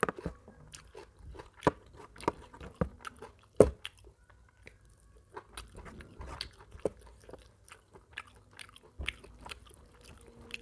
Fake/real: real